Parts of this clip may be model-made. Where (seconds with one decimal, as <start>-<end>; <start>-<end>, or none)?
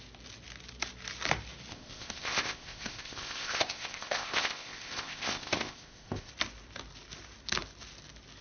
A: 1.7-6.3